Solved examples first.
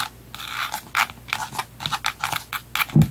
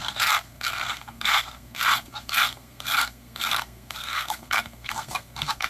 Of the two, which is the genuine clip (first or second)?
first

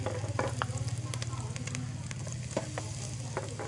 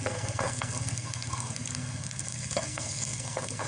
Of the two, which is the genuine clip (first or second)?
first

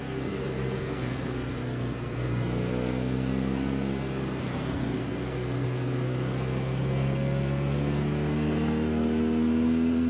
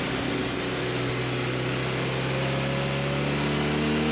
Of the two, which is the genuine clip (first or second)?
second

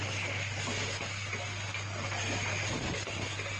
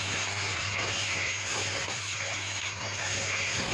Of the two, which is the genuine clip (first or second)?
first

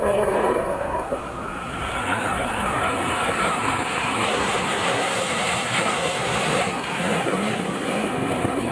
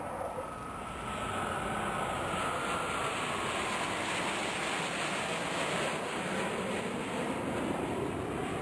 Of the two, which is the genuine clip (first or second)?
second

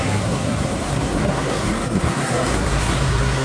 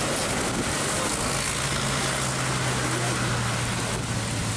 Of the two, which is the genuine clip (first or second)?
second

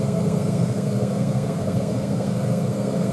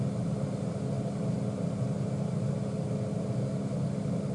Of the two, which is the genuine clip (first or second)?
second